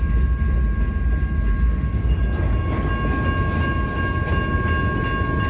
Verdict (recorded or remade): recorded